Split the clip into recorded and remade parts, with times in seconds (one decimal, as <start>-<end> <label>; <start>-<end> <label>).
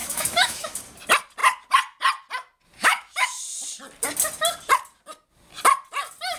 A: 0.0-0.8 remade; 0.8-2.8 recorded; 2.8-3.4 remade; 3.4-6.4 recorded